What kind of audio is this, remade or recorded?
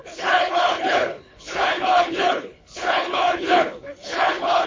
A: remade